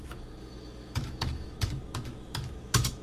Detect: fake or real fake